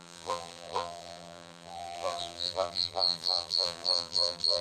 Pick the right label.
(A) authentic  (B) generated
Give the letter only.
B